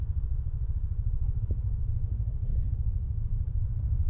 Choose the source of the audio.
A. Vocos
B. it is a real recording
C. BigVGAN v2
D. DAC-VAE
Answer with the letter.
B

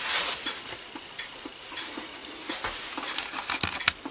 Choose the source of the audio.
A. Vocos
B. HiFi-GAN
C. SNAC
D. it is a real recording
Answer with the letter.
D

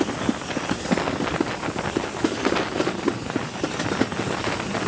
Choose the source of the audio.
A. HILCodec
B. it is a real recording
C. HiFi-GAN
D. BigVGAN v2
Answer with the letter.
B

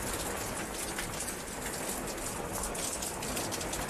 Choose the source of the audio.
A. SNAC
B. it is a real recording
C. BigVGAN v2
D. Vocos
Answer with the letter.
B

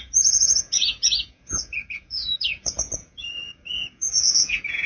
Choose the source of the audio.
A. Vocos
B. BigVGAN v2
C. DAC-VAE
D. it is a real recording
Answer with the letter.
A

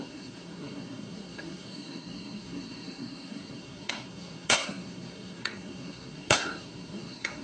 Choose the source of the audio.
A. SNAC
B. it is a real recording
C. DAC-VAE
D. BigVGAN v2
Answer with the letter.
A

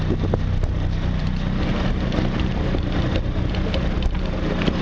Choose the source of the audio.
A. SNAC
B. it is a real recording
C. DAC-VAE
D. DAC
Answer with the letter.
B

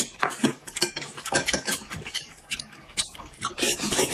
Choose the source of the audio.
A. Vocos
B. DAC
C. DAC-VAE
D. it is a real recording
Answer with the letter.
B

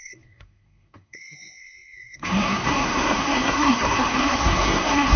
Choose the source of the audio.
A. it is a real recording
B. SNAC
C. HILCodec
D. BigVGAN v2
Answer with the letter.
B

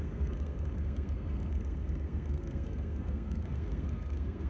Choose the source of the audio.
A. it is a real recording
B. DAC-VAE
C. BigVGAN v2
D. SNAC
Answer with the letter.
D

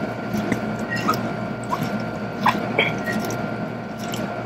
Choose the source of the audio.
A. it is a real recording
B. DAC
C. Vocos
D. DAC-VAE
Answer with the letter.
A